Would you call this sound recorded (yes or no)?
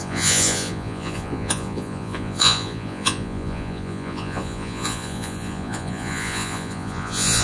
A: no